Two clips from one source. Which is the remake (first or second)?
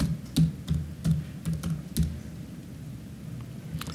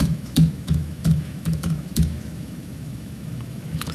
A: second